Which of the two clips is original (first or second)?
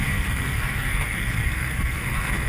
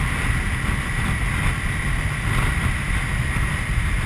second